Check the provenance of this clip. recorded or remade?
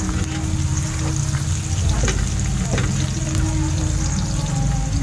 recorded